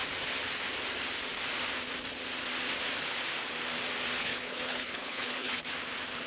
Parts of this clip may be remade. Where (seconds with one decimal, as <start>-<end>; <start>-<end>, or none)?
4.2-5.6